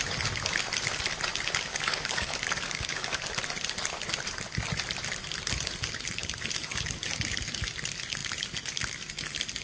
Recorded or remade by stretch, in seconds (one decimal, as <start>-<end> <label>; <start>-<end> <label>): 0.0-1.7 recorded; 1.7-3.2 remade; 3.2-9.6 recorded